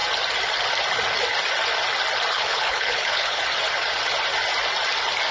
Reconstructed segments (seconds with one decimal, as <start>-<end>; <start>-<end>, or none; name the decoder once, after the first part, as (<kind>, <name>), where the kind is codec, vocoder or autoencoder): 2.3-3.4 (codec, HILCodec)